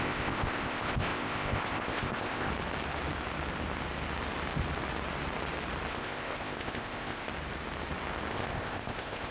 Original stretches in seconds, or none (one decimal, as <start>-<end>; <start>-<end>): 2.5-5.9; 7.3-8.3